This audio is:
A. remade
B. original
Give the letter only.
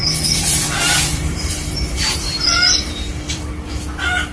A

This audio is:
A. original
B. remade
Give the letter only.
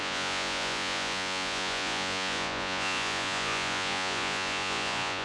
B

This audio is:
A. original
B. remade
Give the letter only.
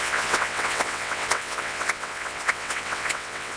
B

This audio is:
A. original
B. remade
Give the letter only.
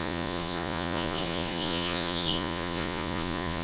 B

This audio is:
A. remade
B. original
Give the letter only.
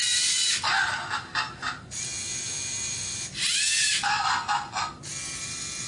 B